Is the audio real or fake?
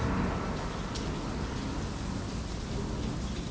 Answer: real